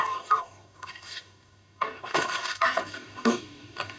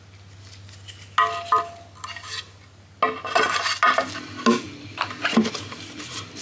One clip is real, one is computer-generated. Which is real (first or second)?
second